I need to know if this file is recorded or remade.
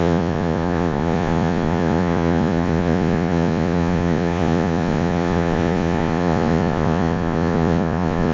remade